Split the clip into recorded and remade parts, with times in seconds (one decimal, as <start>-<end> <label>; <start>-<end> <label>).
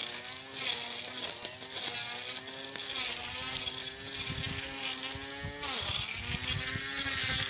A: 0.0-7.5 recorded